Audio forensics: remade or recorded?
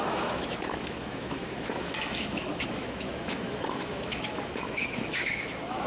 remade